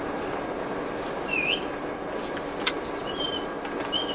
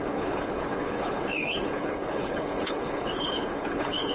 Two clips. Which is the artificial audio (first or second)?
second